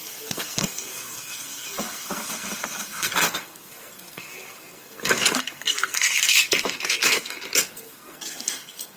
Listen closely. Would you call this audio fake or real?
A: fake